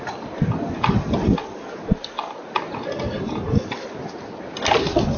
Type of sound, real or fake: real